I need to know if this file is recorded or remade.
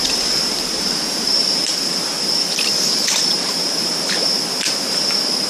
remade